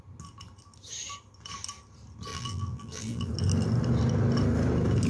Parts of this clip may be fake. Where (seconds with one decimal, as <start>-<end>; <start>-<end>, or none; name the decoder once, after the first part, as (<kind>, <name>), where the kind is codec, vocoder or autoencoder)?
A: 2.3-3.3 (vocoder, BigVGAN v2)